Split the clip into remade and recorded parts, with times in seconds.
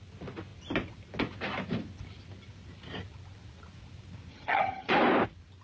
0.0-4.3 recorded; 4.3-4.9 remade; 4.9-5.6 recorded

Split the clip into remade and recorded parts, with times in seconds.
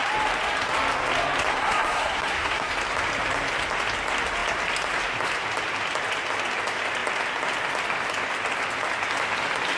0.0-1.5 recorded; 1.5-2.7 remade; 2.7-9.8 recorded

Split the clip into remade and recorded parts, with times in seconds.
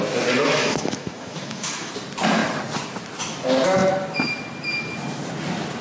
0.0-0.6 recorded; 0.6-1.9 remade; 1.9-5.8 recorded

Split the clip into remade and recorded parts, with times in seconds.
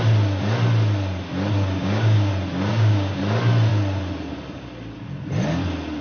0.0-1.8 recorded; 1.8-2.3 remade; 2.3-2.7 recorded; 2.7-3.2 remade; 3.2-6.0 recorded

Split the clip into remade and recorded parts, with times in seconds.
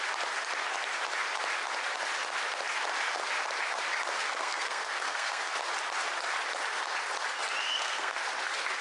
0.0-4.2 recorded; 4.2-5.4 remade; 5.4-7.6 recorded; 7.6-8.2 remade; 8.2-8.8 recorded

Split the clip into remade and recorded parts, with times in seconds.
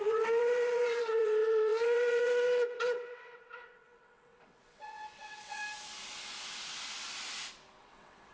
0.0-5.6 remade; 5.6-7.8 recorded; 7.8-8.3 remade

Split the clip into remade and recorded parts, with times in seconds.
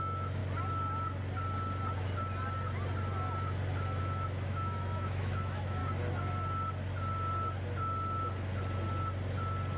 0.0-0.4 remade; 0.4-4.0 recorded; 4.0-5.8 remade; 5.8-9.8 recorded